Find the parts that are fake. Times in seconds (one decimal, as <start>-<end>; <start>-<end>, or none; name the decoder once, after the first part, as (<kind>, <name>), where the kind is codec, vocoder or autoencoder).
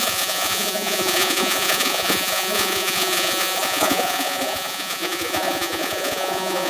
0.0-6.7 (vocoder, Vocos)